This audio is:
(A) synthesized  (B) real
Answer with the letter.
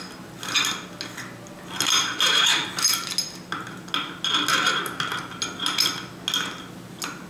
B